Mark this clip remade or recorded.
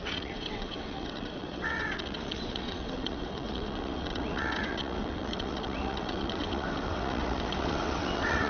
remade